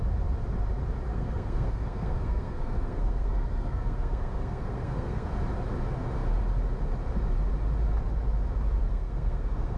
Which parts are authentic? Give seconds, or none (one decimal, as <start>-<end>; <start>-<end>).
0.0-1.1; 5.3-8.9